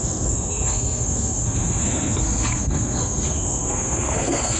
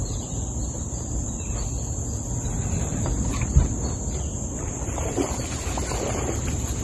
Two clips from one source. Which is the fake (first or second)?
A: first